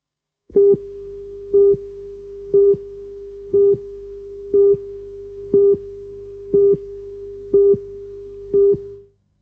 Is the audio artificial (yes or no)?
yes